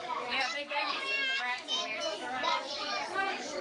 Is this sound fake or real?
fake